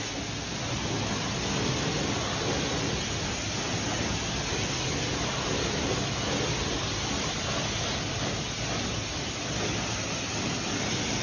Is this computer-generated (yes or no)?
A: no